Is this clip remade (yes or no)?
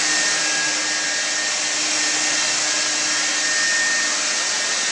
no